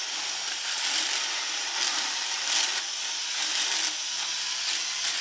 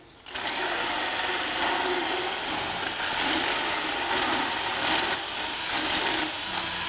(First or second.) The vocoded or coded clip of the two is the second